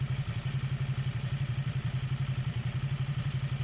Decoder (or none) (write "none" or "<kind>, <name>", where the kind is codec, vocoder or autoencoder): vocoder, BigVGAN v2